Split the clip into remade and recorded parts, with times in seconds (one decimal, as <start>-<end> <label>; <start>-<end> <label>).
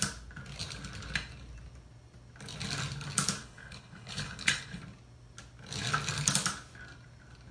0.0-3.4 recorded; 3.4-4.8 remade; 4.8-7.5 recorded